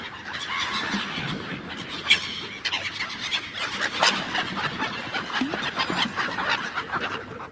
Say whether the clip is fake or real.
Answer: real